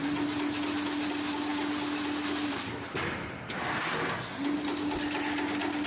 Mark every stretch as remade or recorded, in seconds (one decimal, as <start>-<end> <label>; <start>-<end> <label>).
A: 0.0-5.9 recorded